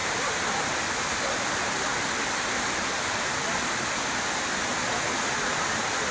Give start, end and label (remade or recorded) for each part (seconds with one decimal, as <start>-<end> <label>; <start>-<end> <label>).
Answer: 0.0-6.1 recorded